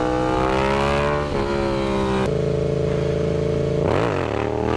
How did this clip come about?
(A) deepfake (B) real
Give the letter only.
B